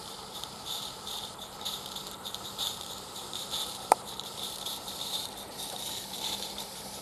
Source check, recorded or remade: remade